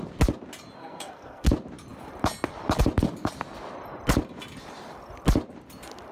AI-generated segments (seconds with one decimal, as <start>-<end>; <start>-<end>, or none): 0.8-1.5